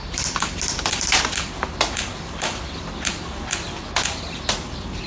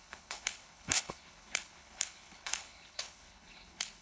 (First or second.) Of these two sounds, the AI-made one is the second